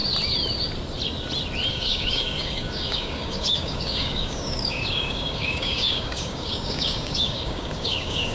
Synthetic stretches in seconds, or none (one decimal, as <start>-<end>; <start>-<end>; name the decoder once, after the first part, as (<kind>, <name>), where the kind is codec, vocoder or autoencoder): 1.7-8.3 (codec, DAC)